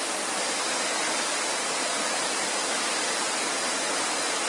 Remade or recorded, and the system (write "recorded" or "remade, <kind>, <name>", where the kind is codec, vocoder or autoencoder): recorded